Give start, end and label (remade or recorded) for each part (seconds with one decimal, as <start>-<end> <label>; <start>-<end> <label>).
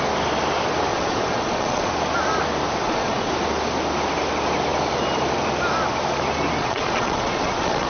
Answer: 0.0-0.9 recorded; 0.9-1.9 remade; 1.9-2.8 recorded; 2.8-3.3 remade; 3.3-6.6 recorded; 6.6-7.9 remade